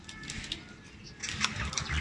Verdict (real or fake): real